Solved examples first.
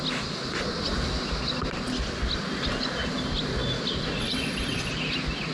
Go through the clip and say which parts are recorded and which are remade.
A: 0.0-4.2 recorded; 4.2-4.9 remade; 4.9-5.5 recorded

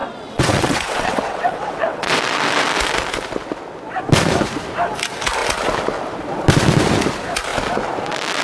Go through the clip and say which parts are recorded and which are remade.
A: 0.0-2.2 remade; 2.2-8.4 recorded

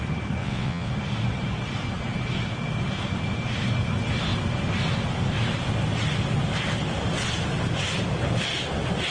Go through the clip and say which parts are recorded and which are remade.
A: 0.0-0.4 recorded; 0.4-0.9 remade; 0.9-9.1 recorded

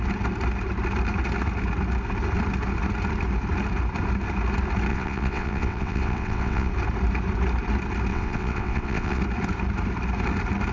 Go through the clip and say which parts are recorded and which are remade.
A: 0.0-4.9 recorded; 4.9-6.7 remade; 6.7-8.1 recorded; 8.1-9.2 remade; 9.2-10.7 recorded